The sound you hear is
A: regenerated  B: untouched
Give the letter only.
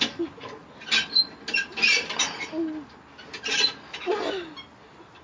B